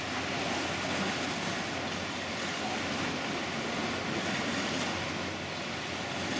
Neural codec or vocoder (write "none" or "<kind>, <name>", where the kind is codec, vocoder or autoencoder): none